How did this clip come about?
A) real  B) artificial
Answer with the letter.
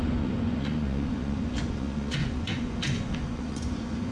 B